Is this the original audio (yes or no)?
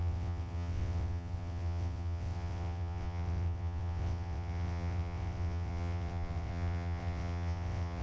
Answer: no